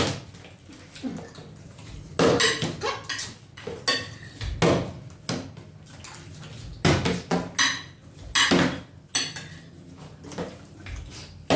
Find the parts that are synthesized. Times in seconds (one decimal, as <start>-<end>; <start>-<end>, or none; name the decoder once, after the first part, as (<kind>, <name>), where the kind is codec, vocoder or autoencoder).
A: 1.4-2.1 (vocoder, BigVGAN v2)